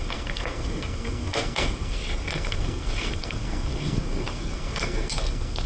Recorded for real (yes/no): no